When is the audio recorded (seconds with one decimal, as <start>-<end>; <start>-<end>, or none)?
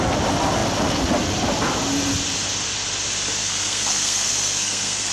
0.0-3.4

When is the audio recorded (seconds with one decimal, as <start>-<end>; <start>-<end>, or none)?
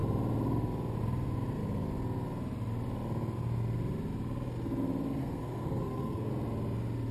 0.0-5.2; 6.3-7.1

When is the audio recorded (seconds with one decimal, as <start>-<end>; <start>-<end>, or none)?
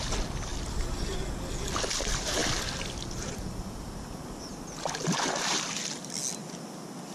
0.0-7.1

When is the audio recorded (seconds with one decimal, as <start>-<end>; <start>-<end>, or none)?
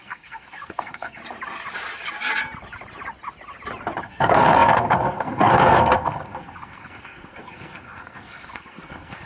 1.2-4.0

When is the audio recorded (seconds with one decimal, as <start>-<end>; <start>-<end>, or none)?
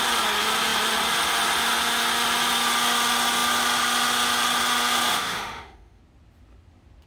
0.0-5.1; 6.0-7.1